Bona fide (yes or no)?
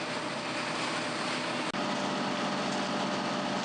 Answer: yes